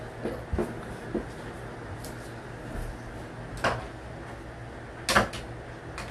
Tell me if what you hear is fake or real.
real